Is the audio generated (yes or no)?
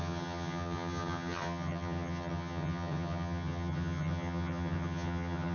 yes